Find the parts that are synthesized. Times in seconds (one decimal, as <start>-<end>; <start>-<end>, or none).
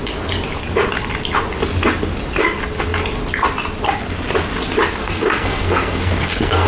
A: 5.0-6.7